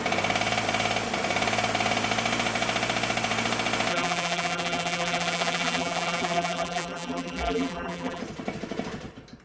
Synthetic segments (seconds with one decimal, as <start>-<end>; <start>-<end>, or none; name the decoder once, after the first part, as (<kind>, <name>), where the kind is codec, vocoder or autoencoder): 3.9-8.2 (vocoder, BigVGAN v2)